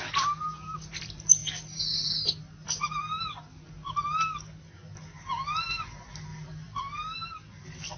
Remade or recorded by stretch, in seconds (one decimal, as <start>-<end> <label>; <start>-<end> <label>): 0.0-6.3 recorded; 6.3-6.8 remade; 6.8-8.0 recorded